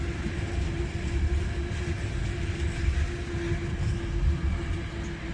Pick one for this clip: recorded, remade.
recorded